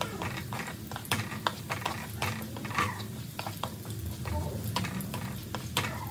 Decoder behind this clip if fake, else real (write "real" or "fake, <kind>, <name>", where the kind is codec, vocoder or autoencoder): real